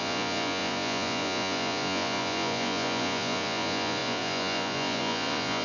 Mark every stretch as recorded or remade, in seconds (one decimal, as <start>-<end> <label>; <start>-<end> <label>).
0.0-5.6 remade